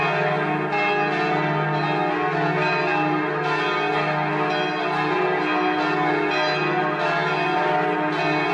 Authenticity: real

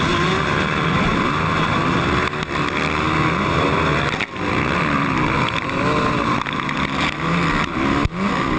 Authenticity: real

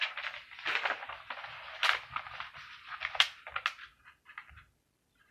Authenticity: real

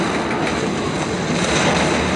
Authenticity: real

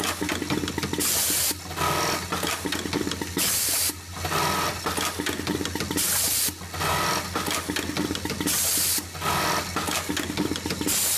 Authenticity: real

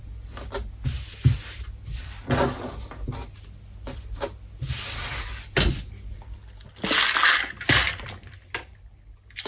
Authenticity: real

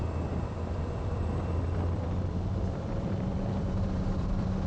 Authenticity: fake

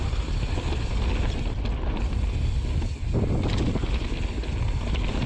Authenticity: real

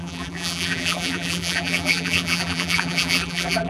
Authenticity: fake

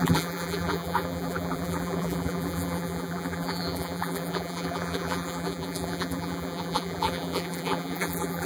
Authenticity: fake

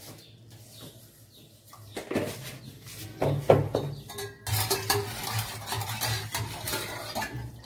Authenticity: real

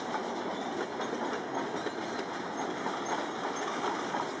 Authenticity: real